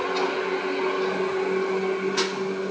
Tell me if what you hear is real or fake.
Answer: real